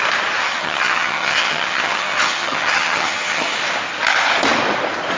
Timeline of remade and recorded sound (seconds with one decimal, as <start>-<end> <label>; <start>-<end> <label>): 0.0-0.4 recorded; 0.4-3.5 remade; 3.5-5.2 recorded